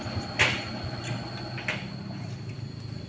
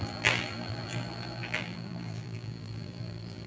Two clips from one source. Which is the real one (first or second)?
first